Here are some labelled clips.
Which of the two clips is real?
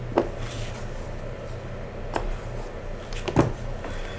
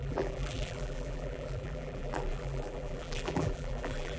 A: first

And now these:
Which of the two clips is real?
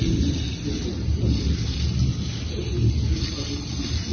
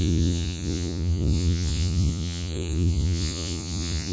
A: first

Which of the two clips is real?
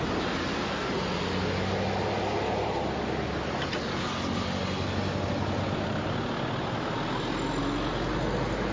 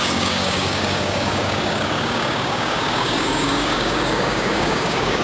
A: first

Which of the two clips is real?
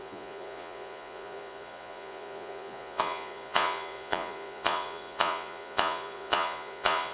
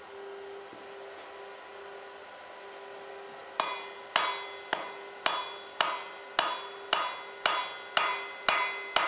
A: second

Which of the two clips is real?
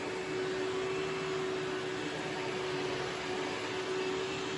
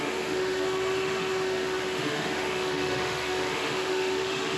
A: first